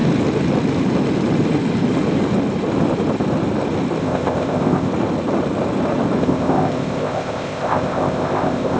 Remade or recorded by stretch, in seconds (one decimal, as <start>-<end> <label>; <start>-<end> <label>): 0.0-4.0 recorded; 4.0-4.9 remade; 4.9-6.2 recorded; 6.2-8.8 remade